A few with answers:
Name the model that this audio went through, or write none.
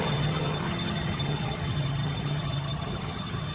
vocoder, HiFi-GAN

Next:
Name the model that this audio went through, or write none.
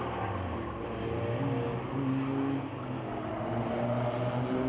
none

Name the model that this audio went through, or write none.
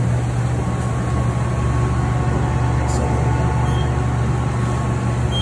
none